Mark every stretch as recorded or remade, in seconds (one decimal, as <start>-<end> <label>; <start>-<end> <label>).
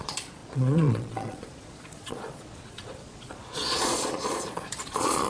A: 0.0-5.3 remade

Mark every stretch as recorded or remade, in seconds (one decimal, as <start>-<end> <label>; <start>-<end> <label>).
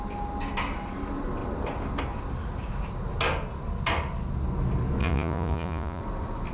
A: 0.0-5.0 recorded; 5.0-6.0 remade; 6.0-6.5 recorded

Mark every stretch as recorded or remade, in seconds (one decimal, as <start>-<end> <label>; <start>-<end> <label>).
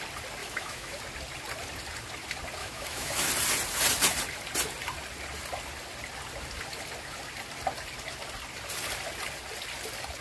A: 0.0-0.4 recorded; 0.4-1.0 remade; 1.0-2.6 recorded; 2.6-3.3 remade; 3.3-10.2 recorded